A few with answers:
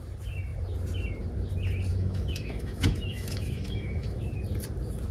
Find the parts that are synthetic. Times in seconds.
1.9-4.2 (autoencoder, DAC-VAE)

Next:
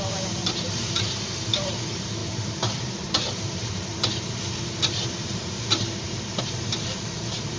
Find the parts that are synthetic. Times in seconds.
0.0-7.6 (vocoder, BigVGAN v2)

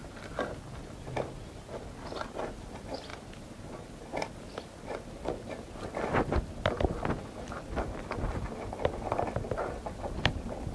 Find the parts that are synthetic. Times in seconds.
none

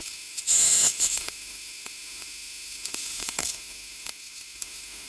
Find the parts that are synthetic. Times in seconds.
0.0-5.1 (autoencoder, DAC-VAE)

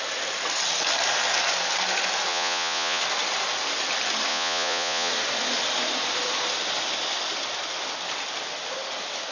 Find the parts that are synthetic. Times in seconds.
2.3-3.0 (vocoder, Vocos); 4.3-5.1

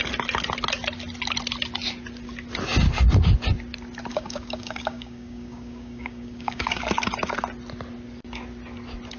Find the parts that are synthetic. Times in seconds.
4.1-6.8 (codec, DAC)